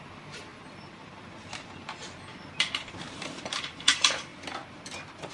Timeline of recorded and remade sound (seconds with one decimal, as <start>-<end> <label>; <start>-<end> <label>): 0.0-4.3 remade; 4.3-5.3 recorded

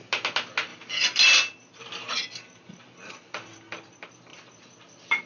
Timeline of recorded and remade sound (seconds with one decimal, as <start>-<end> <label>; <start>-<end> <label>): 0.0-0.7 recorded; 0.7-3.1 remade; 3.1-4.3 recorded; 4.3-5.3 remade

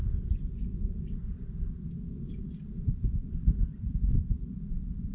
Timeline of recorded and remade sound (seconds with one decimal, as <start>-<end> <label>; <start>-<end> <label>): 0.0-1.2 recorded; 1.2-3.9 remade; 3.9-5.1 recorded

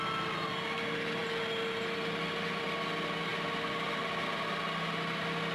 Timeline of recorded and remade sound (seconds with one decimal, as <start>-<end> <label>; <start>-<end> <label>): 0.0-5.5 recorded

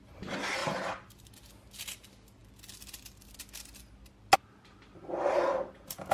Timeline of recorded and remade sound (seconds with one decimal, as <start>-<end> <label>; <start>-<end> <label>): 0.0-0.6 recorded; 0.6-1.3 remade; 1.3-6.1 recorded

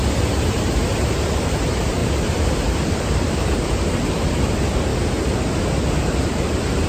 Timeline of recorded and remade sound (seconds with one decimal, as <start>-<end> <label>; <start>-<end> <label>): 0.0-1.0 recorded; 1.0-4.9 remade; 4.9-5.9 recorded; 5.9-6.9 remade

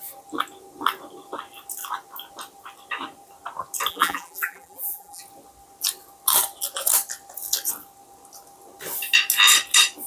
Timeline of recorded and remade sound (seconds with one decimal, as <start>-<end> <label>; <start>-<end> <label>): 0.0-3.9 recorded; 3.9-5.2 remade; 5.2-10.1 recorded